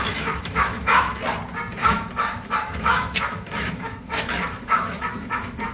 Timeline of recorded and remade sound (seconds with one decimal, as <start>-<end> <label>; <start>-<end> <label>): 0.0-1.2 remade; 1.2-1.8 recorded; 1.8-5.7 remade